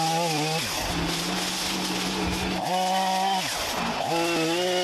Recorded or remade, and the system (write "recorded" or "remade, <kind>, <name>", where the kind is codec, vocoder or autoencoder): recorded